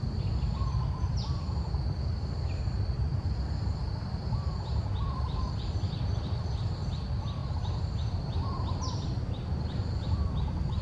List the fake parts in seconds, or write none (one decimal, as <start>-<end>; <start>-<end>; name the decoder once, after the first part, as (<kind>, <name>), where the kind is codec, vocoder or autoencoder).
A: 0.0-10.8 (vocoder, BigVGAN v2)